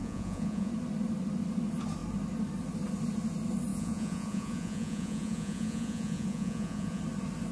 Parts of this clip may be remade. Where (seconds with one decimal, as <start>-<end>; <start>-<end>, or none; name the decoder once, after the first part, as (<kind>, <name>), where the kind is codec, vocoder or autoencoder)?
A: 0.0-0.7 (vocoder, Vocos); 3.7-7.0